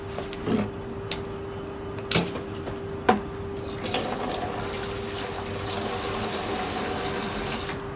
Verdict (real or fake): real